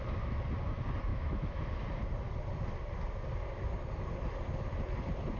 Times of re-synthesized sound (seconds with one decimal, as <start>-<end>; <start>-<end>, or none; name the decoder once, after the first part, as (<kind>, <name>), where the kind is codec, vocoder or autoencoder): 1.1-1.6 (autoencoder, DAC-VAE)